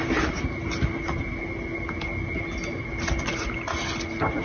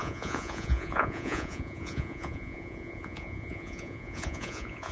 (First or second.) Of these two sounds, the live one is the first